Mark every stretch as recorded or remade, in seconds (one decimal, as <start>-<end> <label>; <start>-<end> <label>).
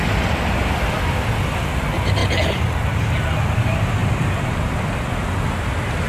0.0-4.0 recorded; 4.0-4.6 remade; 4.6-6.1 recorded